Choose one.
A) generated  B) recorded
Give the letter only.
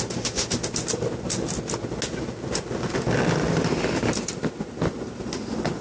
B